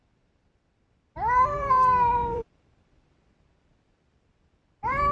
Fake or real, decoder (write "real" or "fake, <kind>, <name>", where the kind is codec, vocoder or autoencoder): fake, vocoder, BigVGAN v2